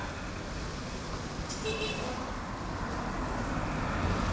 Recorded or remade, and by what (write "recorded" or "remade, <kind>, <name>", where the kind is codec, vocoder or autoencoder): recorded